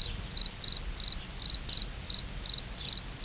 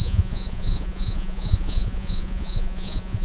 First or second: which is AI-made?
second